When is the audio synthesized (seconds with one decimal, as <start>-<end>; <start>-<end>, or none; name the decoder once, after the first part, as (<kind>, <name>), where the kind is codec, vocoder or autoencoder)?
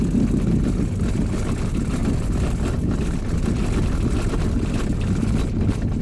none